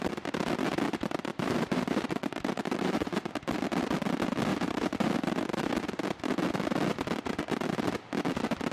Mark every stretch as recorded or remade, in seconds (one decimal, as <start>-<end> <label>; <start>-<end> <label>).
0.0-1.3 recorded; 1.3-3.3 remade; 3.3-4.5 recorded; 4.5-5.7 remade; 5.7-8.7 recorded